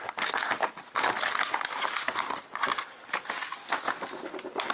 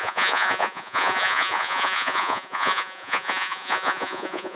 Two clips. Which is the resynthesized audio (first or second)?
second